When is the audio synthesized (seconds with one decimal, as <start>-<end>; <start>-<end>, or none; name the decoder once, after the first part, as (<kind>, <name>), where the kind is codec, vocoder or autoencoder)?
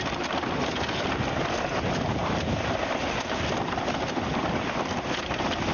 2.2-5.2 (vocoder, BigVGAN v2)